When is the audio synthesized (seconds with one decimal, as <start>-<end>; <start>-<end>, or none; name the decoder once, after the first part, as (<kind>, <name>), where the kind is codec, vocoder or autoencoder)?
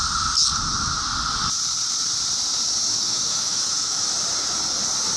2.9-4.1 (autoencoder, DAC-VAE)